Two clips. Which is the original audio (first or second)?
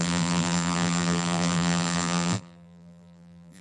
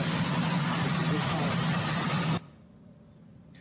second